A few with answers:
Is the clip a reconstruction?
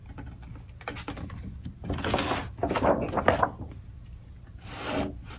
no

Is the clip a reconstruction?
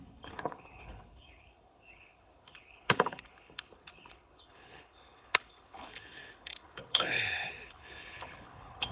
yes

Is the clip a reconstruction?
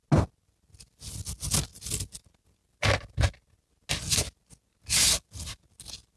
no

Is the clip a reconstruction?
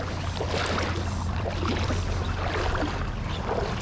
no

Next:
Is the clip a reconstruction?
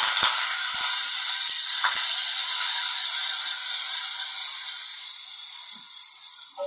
no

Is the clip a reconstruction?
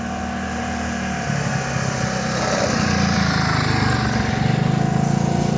no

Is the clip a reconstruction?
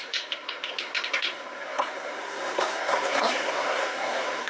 yes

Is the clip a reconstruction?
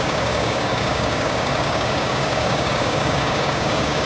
yes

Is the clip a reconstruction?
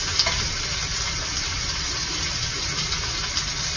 no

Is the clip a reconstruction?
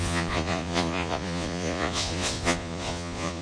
yes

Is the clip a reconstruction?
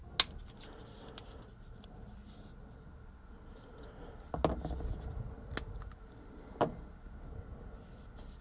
no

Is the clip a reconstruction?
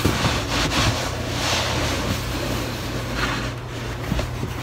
no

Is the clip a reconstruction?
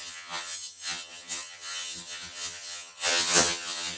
yes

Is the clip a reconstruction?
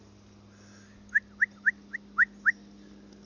no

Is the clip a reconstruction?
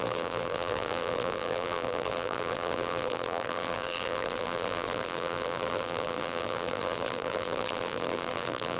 yes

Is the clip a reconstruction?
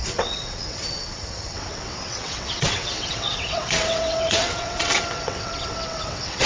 yes